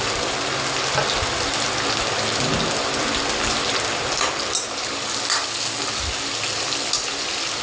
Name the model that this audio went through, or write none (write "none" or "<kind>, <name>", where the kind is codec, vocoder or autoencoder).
none